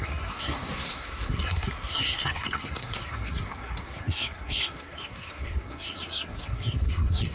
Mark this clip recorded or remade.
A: remade